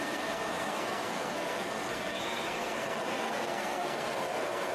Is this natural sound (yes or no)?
no